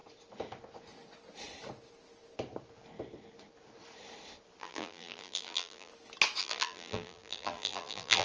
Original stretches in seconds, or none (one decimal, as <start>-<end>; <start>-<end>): 0.0-4.6; 5.9-6.4